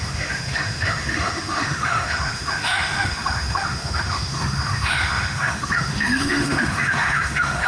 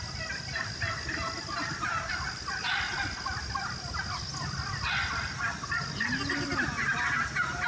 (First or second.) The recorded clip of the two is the second